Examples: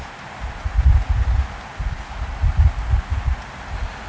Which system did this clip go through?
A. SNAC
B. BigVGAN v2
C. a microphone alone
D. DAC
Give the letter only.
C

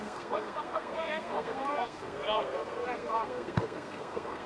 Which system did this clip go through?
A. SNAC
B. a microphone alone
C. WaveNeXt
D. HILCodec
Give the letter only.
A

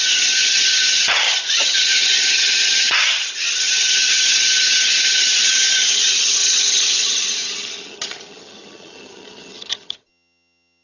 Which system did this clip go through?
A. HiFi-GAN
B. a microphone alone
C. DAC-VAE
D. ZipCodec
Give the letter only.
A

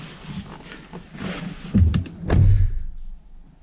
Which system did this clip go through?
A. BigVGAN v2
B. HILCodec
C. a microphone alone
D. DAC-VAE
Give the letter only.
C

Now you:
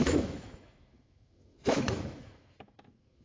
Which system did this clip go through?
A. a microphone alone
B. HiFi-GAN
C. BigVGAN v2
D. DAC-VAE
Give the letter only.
D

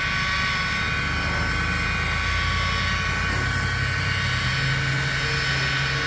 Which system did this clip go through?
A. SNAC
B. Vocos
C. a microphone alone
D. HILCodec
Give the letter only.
C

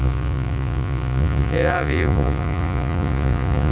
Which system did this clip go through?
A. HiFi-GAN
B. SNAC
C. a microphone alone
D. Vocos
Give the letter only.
D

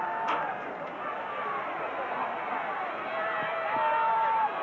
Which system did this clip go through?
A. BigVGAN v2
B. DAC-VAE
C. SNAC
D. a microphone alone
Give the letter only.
D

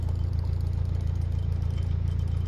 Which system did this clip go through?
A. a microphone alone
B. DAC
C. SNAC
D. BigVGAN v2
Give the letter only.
D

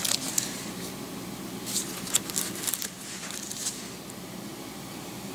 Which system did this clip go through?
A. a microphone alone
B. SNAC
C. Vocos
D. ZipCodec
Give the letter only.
A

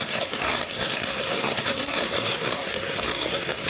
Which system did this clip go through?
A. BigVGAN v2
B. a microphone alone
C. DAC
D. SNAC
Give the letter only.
D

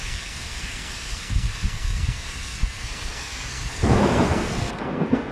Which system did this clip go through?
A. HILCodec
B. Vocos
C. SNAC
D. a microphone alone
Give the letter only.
C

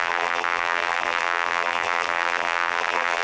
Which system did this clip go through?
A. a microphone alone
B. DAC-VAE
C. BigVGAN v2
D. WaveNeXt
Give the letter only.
C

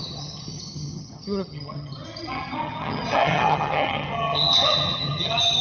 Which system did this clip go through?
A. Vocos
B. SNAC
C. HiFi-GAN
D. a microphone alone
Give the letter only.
C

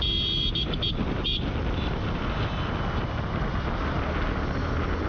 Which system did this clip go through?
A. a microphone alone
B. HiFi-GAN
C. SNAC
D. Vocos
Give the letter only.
A